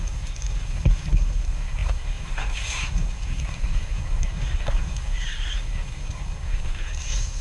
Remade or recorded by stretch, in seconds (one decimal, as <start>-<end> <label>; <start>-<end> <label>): 0.0-7.4 remade